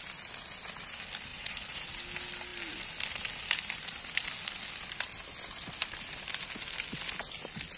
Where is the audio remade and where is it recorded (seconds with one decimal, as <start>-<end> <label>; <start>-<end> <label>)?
0.0-1.3 recorded; 1.3-1.9 remade; 1.9-7.8 recorded